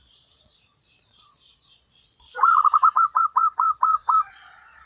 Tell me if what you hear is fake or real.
fake